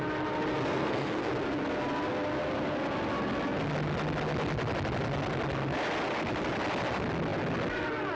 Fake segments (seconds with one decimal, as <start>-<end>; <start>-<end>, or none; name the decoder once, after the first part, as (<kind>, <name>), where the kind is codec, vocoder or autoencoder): 0.7-1.3 (codec, SNAC)